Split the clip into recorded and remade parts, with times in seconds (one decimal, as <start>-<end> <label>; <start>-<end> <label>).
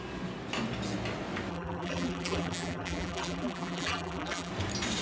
0.0-1.5 recorded; 1.5-4.5 remade; 4.5-5.0 recorded